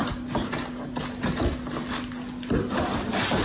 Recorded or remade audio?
recorded